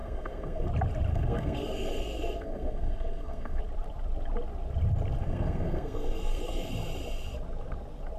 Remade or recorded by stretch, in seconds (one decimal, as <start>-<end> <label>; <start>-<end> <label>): 0.0-0.7 remade; 0.7-1.1 recorded; 1.1-3.6 remade; 3.6-5.2 recorded; 5.2-6.7 remade; 6.7-8.2 recorded